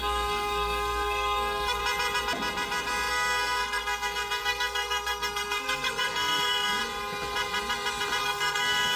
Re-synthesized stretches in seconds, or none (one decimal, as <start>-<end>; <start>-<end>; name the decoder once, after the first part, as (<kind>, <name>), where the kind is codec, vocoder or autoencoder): 0.0-1.8 (codec, SNAC); 3.1-6.8; 8.2-9.0